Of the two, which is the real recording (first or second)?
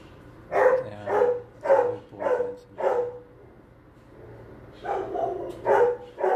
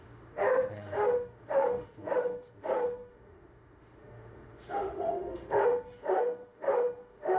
first